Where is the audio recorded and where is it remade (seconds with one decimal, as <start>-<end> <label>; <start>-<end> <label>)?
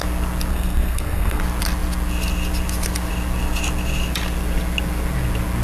0.0-0.5 recorded; 0.5-1.4 remade; 1.4-5.6 recorded